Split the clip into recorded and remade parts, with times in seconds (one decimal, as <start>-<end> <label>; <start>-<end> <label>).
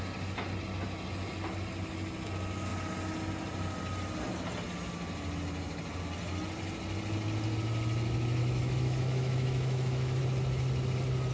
0.0-8.4 recorded; 8.4-10.2 remade; 10.2-11.3 recorded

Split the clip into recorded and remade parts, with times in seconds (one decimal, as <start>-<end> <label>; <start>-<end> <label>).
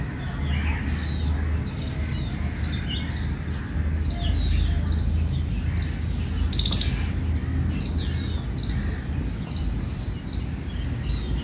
0.0-11.4 recorded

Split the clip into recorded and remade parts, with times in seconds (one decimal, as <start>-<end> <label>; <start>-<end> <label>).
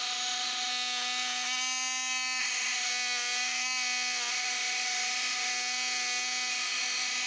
0.0-0.7 remade; 0.7-2.4 recorded; 2.4-2.9 remade; 2.9-4.3 recorded; 4.3-5.5 remade; 5.5-6.5 recorded; 6.5-7.3 remade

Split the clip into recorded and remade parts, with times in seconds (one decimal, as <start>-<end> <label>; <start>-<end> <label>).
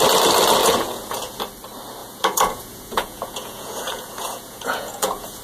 0.0-0.6 recorded; 0.6-1.4 remade; 1.4-2.0 recorded; 2.0-5.4 remade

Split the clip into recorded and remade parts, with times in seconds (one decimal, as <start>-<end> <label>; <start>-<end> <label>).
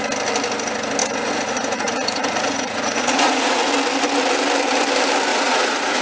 0.0-1.0 recorded; 1.0-3.7 remade; 3.7-5.3 recorded; 5.3-6.0 remade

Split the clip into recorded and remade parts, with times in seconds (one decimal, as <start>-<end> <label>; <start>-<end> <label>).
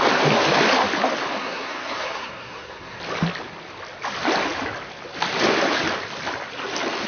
0.0-1.4 recorded; 1.4-3.0 remade; 3.0-7.1 recorded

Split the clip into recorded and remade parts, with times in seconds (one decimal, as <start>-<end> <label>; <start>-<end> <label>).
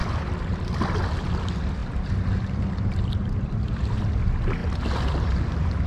0.0-1.1 remade; 1.1-1.8 recorded; 1.8-4.1 remade; 4.1-5.9 recorded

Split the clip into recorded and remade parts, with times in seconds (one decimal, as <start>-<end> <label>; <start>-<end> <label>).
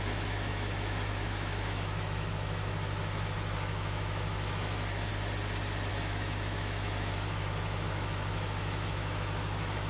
0.0-5.1 remade; 5.1-5.9 recorded; 5.9-9.9 remade